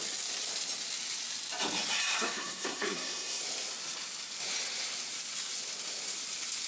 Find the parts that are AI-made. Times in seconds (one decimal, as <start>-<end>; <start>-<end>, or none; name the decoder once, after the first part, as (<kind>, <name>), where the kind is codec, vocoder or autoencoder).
2.1-3.4 (codec, SNAC)